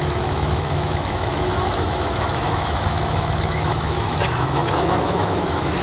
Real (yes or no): no